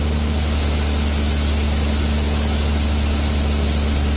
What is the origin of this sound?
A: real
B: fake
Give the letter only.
A